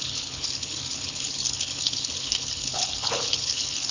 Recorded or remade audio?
remade